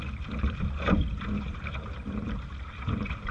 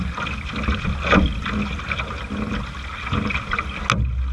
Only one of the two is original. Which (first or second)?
second